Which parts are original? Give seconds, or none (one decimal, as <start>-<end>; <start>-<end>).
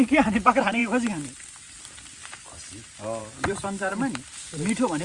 0.8-3.2; 3.9-5.0